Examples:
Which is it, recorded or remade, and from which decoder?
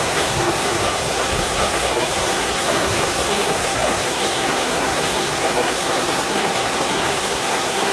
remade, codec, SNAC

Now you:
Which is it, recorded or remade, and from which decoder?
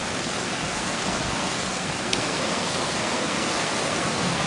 remade, codec, SNAC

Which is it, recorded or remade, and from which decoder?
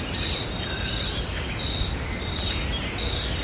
recorded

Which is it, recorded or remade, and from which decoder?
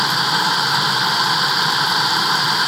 recorded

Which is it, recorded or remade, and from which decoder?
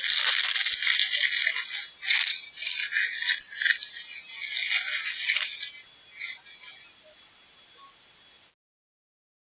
recorded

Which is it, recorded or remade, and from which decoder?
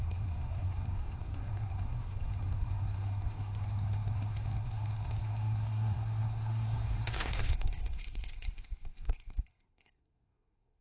remade, codec, SNAC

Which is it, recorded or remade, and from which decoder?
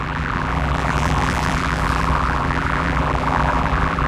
remade, vocoder, BigVGAN v2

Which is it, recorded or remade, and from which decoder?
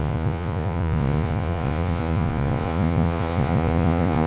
remade, vocoder, Vocos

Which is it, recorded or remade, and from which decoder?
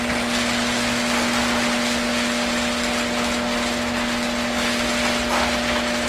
recorded